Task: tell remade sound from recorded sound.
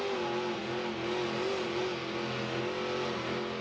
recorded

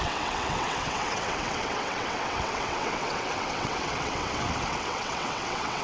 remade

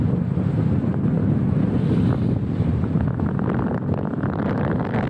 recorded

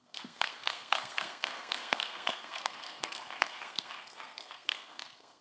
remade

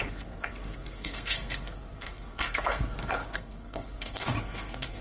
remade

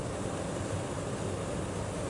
recorded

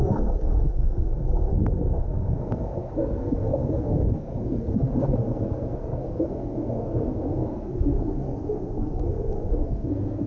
remade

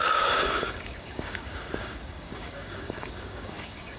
remade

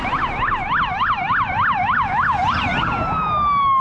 recorded